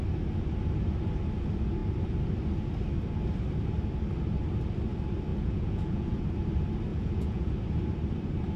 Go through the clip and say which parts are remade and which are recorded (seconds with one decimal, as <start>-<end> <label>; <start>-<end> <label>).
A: 0.0-5.3 recorded; 5.3-6.2 remade; 6.2-6.9 recorded; 6.9-7.5 remade; 7.5-8.6 recorded